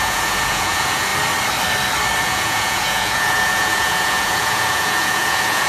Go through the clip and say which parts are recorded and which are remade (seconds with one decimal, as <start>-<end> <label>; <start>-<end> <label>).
0.0-1.1 remade; 1.1-2.2 recorded; 2.2-5.7 remade